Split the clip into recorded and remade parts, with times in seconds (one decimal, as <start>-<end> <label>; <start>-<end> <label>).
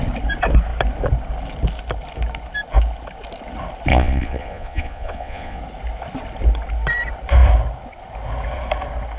0.0-3.9 recorded; 3.9-5.6 remade; 5.6-9.2 recorded